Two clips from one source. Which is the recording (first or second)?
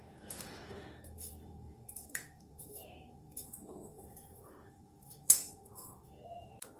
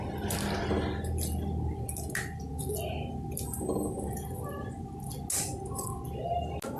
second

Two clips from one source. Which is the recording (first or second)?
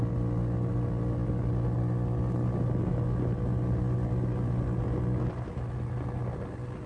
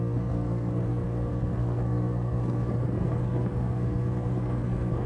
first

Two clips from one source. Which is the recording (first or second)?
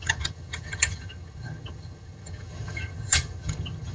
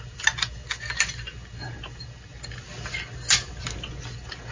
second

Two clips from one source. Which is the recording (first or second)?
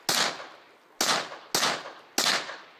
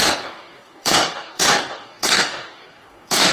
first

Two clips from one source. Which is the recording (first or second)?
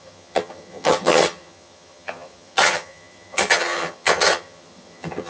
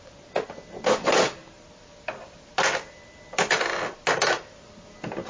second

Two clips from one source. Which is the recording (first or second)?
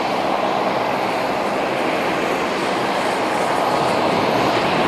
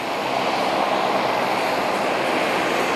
second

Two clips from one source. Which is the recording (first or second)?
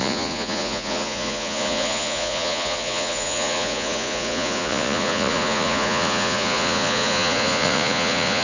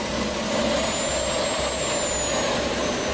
second